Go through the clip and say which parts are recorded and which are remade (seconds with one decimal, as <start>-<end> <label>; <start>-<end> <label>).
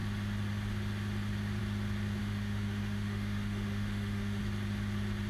0.0-2.2 recorded; 2.2-4.4 remade; 4.4-5.3 recorded